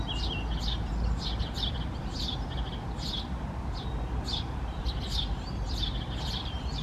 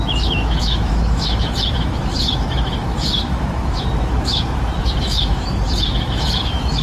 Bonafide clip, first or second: first